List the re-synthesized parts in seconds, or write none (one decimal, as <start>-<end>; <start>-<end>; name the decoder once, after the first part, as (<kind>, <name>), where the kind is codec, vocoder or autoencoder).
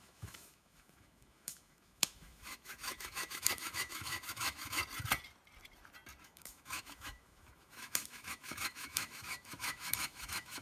0.0-4.8 (autoencoder, DAC-VAE); 6.2-10.6